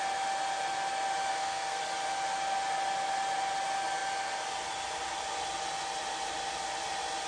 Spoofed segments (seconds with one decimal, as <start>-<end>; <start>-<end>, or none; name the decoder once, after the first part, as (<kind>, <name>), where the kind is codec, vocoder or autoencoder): 1.3-1.8 (codec, SNAC)